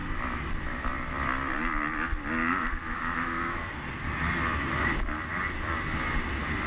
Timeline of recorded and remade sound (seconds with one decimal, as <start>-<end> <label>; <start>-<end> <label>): 0.0-2.5 recorded; 2.5-3.6 remade; 3.6-6.7 recorded